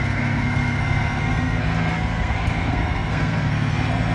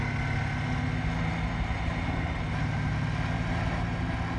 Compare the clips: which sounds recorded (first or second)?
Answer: second